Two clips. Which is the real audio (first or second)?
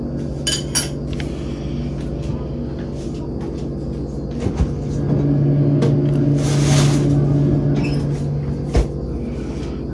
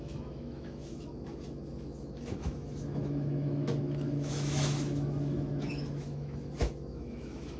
first